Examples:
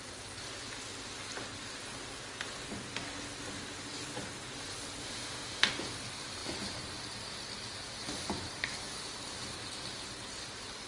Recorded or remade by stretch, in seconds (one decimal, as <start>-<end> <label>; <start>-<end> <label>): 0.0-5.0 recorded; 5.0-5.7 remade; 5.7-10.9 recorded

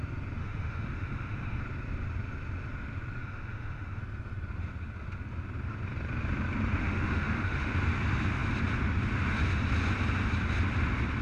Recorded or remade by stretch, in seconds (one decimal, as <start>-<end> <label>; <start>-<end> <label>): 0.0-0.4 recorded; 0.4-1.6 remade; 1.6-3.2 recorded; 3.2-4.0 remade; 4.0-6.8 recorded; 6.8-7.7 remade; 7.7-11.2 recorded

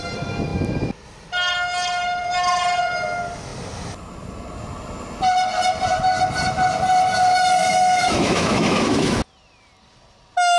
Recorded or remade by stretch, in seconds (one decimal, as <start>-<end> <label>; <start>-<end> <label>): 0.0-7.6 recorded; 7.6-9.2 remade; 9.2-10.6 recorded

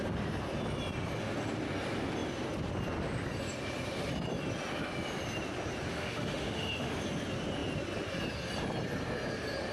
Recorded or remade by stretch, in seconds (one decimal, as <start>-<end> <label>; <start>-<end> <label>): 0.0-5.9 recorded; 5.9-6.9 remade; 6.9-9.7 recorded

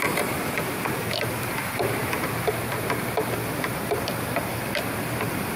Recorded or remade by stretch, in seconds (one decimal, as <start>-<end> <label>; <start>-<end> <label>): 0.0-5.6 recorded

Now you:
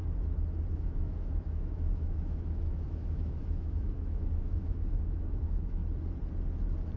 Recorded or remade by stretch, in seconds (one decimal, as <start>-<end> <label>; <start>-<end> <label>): 0.0-0.7 recorded; 0.7-5.8 remade; 5.8-7.0 recorded

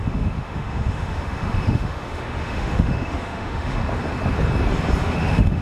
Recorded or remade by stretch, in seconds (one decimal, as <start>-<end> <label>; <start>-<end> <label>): 0.0-3.8 remade; 3.8-5.0 recorded; 5.0-5.6 remade